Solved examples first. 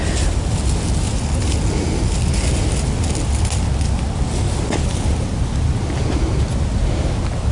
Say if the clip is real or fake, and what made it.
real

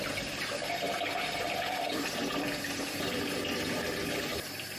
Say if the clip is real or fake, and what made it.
real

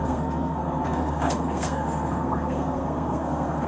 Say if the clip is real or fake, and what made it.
fake, codec, SNAC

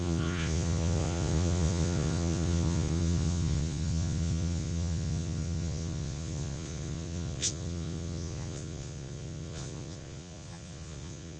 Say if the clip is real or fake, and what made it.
fake, vocoder, Vocos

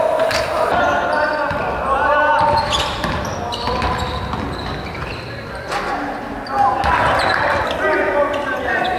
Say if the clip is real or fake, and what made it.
real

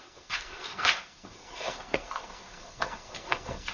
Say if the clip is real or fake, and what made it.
fake, codec, SNAC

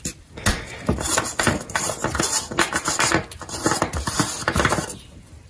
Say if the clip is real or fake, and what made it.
real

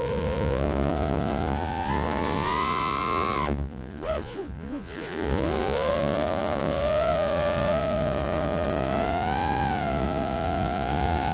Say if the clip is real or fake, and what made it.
fake, vocoder, Vocos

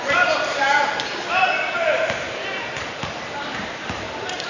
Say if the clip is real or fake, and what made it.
fake, vocoder, BigVGAN v2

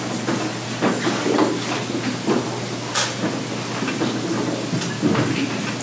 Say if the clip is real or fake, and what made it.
real